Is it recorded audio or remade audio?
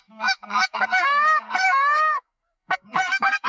remade